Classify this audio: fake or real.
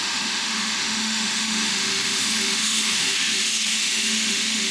fake